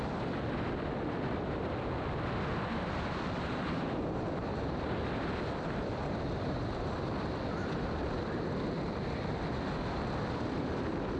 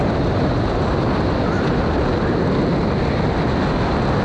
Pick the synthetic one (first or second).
first